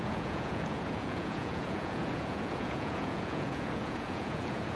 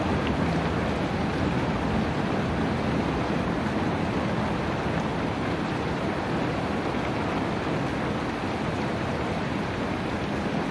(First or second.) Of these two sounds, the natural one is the second